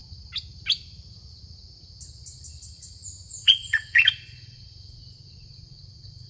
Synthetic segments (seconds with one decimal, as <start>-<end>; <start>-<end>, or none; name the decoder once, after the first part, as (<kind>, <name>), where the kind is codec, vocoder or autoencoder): 2.6-6.3 (vocoder, Vocos)